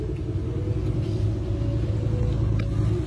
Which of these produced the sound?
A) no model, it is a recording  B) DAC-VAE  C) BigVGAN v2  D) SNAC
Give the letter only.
A